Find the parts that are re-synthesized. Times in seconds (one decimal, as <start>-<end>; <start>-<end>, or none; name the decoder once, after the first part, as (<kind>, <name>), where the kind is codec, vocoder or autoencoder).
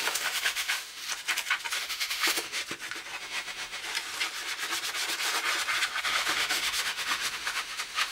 0.0-1.0 (autoencoder, DAC-VAE); 1.7-2.6; 3.2-3.8; 6.0-8.1